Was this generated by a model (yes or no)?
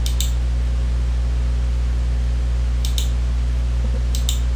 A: no